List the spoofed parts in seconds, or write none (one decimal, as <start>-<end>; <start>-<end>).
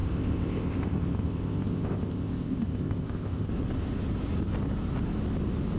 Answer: 0.0-3.5